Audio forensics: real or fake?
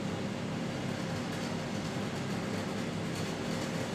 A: real